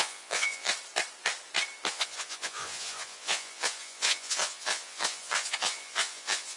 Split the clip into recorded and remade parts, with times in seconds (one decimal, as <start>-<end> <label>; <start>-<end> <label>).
0.0-0.7 remade; 0.7-1.9 recorded; 1.9-6.6 remade